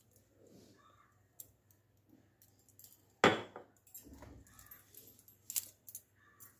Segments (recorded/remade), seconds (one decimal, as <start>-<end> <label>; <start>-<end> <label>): 0.0-6.6 recorded